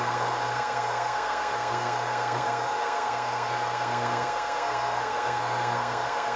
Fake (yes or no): yes